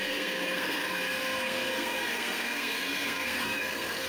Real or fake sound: fake